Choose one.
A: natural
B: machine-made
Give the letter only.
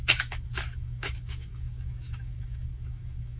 B